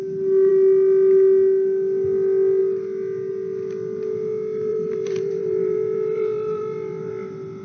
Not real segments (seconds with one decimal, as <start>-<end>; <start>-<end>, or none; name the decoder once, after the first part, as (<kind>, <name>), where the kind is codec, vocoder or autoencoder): 4.7-7.1 (vocoder, BigVGAN v2)